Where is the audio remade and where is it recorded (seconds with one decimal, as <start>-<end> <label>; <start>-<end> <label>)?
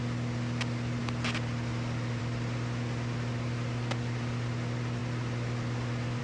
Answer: 0.0-6.2 recorded